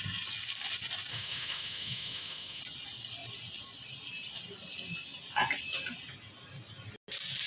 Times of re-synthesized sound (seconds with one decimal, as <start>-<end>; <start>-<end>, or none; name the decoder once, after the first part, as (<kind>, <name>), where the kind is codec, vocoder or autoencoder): 1.1-2.6 (autoencoder, DAC-VAE)

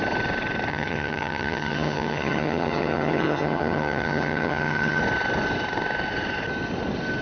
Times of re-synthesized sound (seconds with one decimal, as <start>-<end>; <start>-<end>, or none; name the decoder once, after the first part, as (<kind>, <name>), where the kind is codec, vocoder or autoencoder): 0.7-5.0 (vocoder, HiFi-GAN)